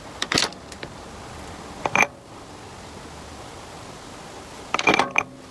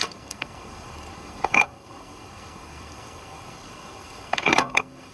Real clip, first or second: first